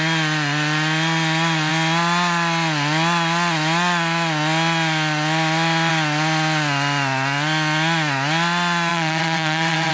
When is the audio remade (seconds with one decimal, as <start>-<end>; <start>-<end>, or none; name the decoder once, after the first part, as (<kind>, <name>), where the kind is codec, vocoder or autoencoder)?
8.9-9.9 (vocoder, WaveNeXt)